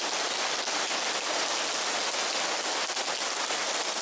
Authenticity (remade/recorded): recorded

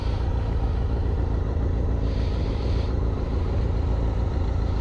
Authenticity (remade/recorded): remade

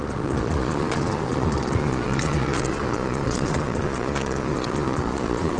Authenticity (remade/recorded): remade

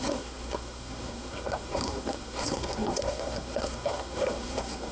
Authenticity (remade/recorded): remade